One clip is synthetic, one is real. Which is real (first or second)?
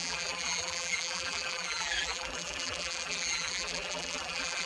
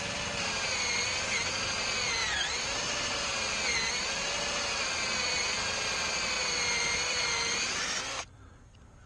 second